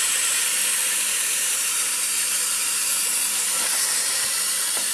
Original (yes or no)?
no